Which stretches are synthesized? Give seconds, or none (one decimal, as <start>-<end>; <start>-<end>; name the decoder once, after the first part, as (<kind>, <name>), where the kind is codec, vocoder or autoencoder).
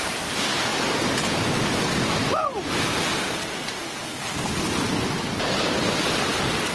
none